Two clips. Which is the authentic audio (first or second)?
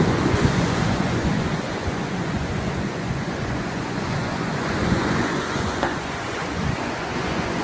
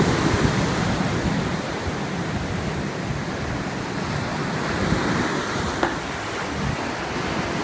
second